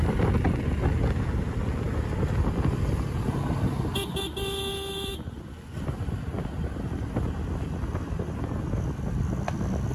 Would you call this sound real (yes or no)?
yes